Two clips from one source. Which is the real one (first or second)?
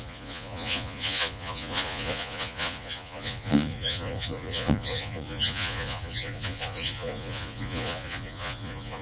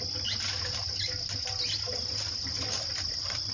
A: second